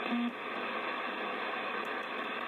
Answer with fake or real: real